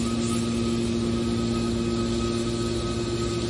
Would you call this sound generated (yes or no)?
no